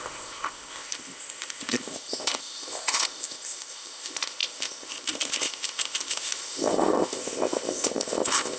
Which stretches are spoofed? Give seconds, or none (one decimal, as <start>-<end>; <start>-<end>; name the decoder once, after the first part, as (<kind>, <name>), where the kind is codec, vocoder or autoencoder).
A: 0.0-8.6 (codec, ZipCodec)